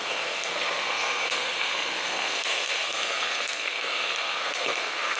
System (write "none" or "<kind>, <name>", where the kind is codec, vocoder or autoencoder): codec, SNAC